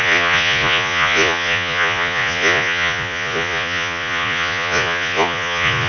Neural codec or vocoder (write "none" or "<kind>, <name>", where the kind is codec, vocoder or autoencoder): vocoder, Vocos